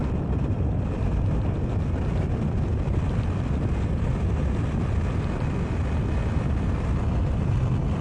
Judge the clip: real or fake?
real